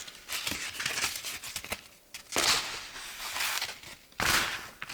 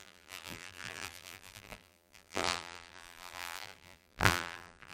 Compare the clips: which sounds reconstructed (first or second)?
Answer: second